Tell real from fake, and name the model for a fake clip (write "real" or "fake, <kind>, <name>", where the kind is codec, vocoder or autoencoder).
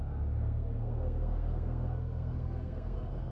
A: fake, codec, SNAC